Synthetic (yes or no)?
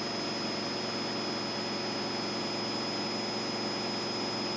no